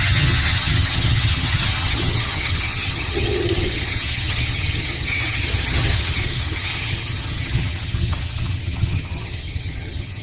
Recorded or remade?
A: remade